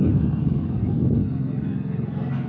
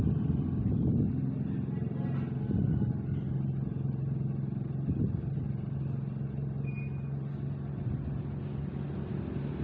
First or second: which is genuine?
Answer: second